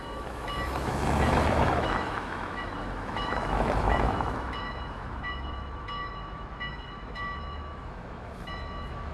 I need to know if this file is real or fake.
fake